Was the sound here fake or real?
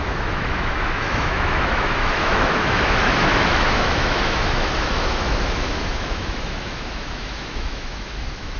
fake